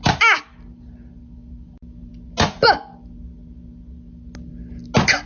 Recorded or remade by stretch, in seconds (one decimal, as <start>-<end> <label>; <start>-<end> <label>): 0.0-5.3 recorded